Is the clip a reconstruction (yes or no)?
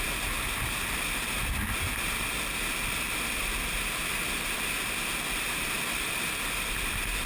no